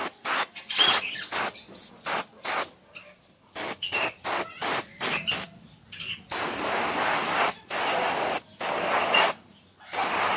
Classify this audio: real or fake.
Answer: real